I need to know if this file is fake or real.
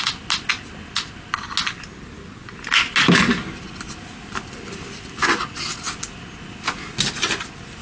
real